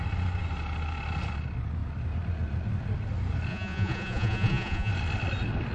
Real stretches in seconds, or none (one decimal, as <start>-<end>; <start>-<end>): 0.0-3.5; 4.9-5.7